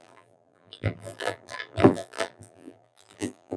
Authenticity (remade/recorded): remade